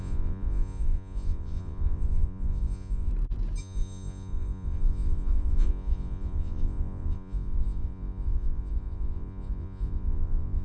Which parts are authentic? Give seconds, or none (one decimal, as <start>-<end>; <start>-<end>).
3.1-3.6